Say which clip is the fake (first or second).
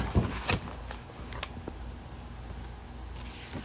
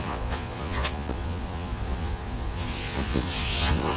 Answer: second